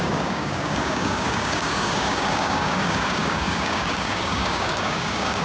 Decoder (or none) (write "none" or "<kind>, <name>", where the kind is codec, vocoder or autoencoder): codec, DAC